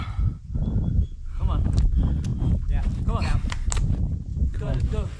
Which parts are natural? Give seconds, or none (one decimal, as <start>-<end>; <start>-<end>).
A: 0.0-4.3